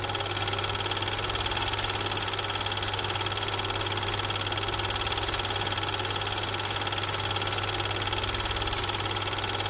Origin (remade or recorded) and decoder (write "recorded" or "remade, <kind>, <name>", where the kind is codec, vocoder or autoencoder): recorded